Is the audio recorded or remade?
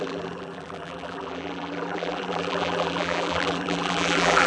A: remade